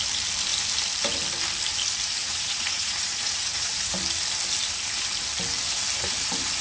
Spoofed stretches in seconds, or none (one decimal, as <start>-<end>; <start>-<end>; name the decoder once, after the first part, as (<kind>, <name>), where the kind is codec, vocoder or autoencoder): 2.2-3.9 (vocoder, Vocos)